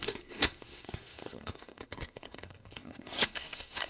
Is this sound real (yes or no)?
no